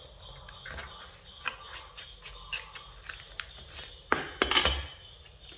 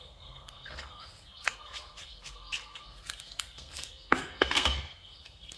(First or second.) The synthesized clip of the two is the second